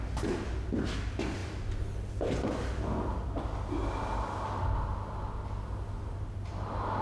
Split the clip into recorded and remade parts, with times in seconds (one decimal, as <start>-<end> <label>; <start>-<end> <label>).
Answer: 0.0-7.0 recorded